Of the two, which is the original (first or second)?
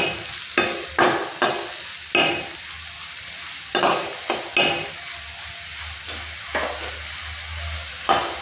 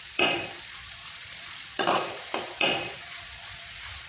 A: first